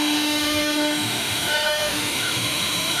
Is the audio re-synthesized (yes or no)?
yes